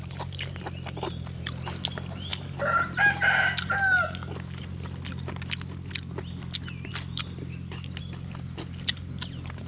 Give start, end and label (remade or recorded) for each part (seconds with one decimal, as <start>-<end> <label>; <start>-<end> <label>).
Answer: 0.0-9.7 recorded